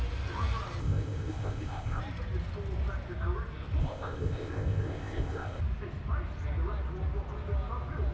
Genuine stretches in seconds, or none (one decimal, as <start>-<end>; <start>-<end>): 0.0-0.8; 2.0-3.8; 5.6-8.1